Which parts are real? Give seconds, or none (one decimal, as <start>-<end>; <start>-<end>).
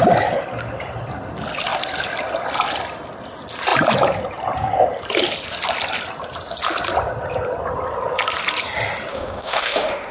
0.0-9.1